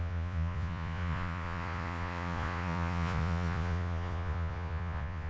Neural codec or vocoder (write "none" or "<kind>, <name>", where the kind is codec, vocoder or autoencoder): vocoder, Vocos